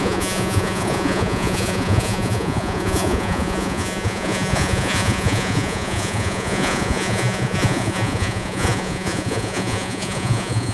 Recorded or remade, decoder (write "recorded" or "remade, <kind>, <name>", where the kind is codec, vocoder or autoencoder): remade, vocoder, Vocos